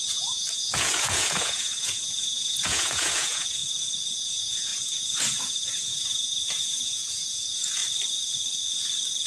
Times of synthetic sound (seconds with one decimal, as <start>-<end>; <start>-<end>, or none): 0.0-3.6; 4.1-7.8